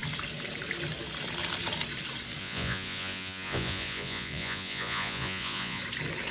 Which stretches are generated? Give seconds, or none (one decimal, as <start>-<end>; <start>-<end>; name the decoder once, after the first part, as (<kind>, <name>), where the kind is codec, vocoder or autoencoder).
2.4-5.8 (vocoder, Vocos)